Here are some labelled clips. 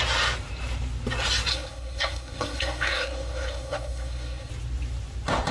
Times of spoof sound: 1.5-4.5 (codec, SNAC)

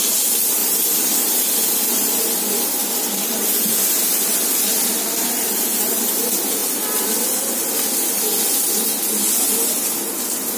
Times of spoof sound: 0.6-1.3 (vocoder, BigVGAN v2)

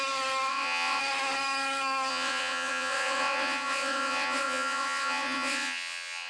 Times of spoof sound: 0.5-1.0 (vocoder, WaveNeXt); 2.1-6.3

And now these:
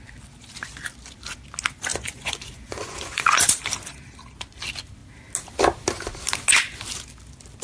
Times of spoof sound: 1.9-3.5 (vocoder, Vocos)